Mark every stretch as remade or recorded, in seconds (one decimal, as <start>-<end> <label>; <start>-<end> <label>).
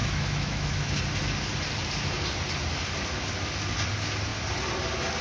0.0-1.0 remade; 1.0-5.2 recorded